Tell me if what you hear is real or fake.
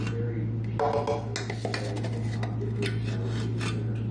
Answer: real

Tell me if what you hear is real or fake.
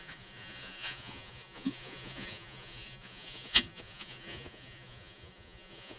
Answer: fake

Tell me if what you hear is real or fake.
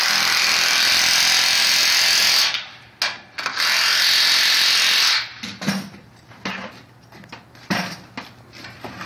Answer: real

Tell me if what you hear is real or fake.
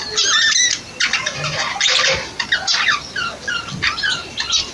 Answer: real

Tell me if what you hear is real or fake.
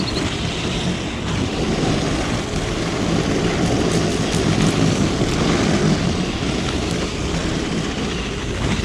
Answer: real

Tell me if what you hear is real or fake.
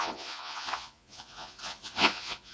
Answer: fake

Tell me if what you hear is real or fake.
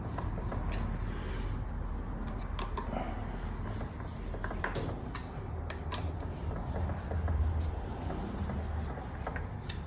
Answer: real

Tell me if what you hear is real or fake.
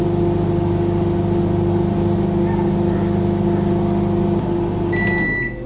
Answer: real